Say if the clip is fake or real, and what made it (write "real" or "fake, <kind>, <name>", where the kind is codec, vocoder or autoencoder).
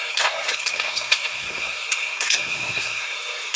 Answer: fake, codec, SNAC